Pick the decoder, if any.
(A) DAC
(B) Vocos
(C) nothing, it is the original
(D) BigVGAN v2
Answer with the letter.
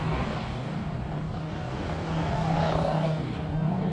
A